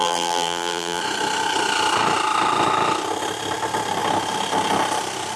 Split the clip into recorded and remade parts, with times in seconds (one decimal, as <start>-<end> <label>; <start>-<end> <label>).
0.0-1.0 remade; 1.0-5.4 recorded